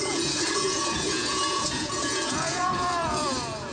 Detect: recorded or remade remade